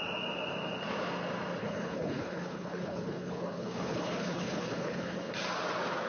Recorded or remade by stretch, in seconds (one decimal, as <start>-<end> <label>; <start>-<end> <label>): 0.0-1.6 recorded; 1.6-5.3 remade; 5.3-6.1 recorded